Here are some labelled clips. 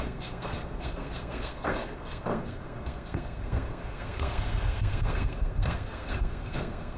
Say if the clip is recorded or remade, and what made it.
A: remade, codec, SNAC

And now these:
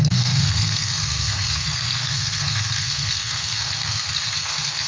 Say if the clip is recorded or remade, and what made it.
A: remade, codec, SNAC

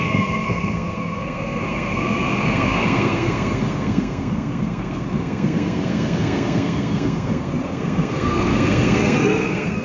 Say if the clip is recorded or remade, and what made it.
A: remade, codec, SNAC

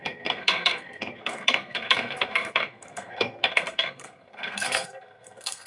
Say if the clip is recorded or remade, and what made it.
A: remade, codec, SNAC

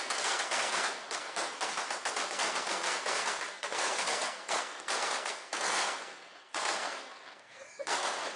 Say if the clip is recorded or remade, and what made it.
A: remade, codec, SNAC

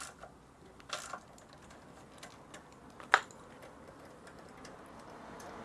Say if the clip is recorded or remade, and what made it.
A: recorded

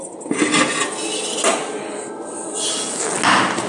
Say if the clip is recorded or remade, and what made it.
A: recorded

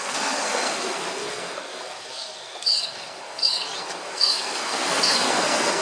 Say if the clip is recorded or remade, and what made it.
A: remade, codec, SNAC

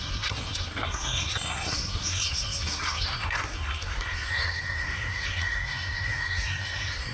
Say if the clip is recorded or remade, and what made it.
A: remade, codec, SNAC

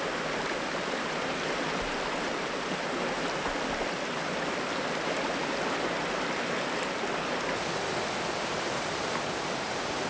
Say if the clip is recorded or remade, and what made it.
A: recorded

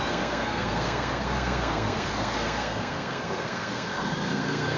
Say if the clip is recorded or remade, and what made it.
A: remade, codec, SNAC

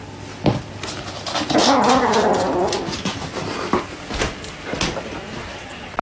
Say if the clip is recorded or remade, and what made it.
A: recorded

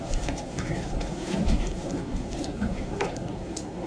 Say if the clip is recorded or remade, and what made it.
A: remade, codec, SNAC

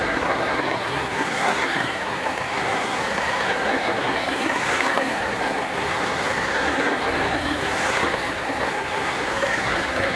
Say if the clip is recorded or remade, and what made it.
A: remade, codec, SNAC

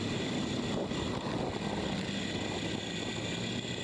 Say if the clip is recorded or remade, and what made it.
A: recorded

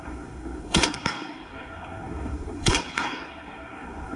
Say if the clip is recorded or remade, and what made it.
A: remade, codec, SNAC